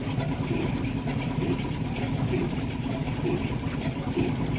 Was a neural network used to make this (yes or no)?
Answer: no